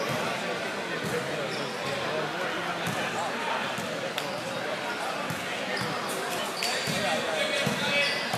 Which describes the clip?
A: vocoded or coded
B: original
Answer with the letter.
B